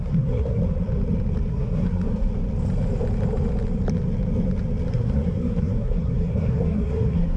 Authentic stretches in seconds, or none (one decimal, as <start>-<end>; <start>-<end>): 0.6-1.5; 2.3-4.9